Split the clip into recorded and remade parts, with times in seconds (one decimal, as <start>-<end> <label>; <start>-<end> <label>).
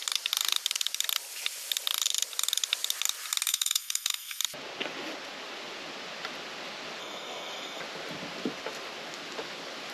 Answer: 0.0-3.5 recorded; 3.5-4.4 remade; 4.4-7.0 recorded; 7.0-7.8 remade; 7.8-9.9 recorded